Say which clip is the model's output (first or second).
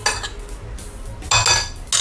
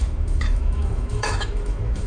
second